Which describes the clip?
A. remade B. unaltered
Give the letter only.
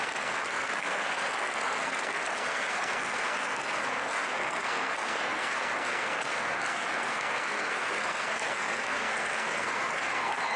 A